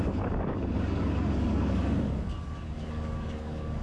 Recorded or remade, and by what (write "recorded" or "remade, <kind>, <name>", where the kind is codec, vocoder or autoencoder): remade, codec, DAC